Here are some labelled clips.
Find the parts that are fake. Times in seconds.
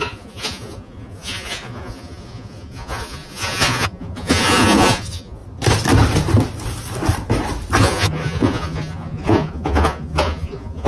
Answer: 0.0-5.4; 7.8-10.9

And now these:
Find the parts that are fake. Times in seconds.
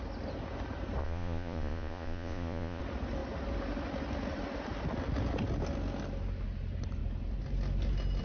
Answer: 1.0-2.8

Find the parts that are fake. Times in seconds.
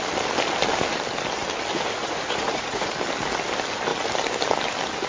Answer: 1.7-2.9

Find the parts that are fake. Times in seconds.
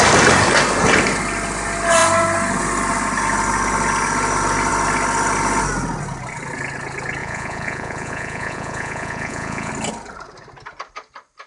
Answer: 7.2-9.7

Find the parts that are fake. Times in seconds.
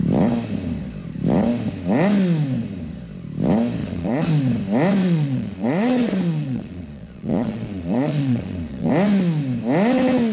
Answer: 3.8-4.3; 5.0-8.9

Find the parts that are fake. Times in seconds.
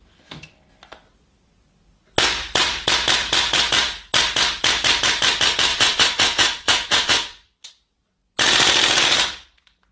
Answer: 5.7-7.7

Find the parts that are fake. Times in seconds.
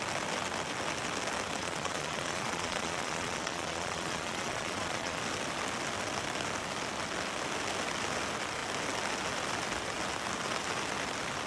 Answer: 1.6-5.2